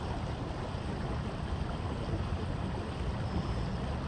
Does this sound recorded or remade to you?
recorded